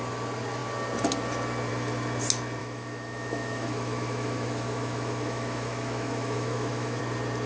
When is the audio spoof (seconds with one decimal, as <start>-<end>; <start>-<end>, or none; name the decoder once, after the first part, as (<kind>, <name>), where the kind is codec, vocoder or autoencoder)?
2.6-7.0 (autoencoder, DAC-VAE)